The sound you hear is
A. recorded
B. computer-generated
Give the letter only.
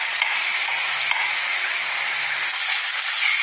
A